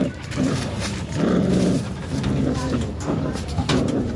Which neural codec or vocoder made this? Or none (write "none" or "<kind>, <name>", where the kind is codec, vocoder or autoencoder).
vocoder, BigVGAN v2